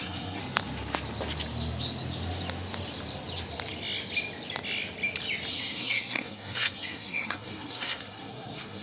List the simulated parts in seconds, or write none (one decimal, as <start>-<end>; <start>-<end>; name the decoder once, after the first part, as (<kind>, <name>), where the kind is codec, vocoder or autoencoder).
0.0-0.4 (codec, SNAC); 5.5-8.8